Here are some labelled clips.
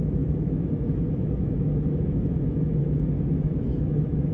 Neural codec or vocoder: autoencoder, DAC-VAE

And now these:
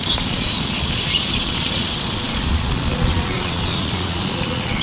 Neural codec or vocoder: vocoder, Vocos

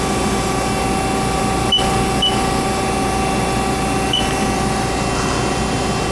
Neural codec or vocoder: none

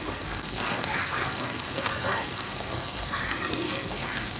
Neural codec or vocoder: codec, SNAC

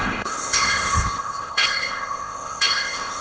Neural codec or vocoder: codec, ZipCodec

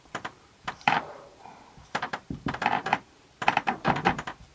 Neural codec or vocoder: vocoder, BigVGAN v2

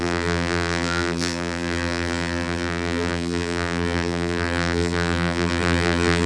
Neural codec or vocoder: vocoder, BigVGAN v2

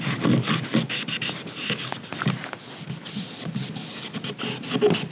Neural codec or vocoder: none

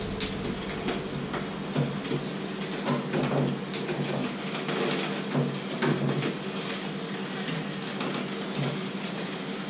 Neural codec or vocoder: none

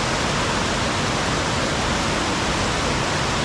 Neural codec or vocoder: none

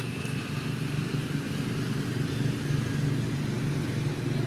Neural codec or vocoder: none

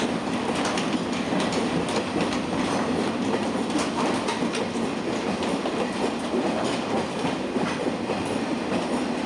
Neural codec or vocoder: none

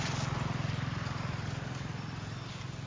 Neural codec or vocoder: none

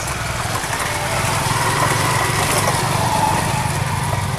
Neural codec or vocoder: none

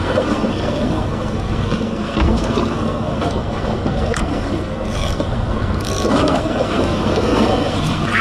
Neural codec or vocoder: codec, SNAC